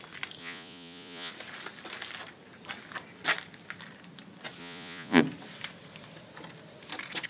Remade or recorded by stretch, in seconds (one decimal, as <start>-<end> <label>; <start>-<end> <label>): 0.0-0.4 recorded; 0.4-1.3 remade; 1.3-4.6 recorded; 4.6-5.2 remade; 5.2-7.3 recorded